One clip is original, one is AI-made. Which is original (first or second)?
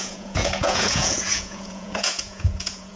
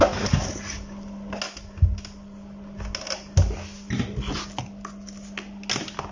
second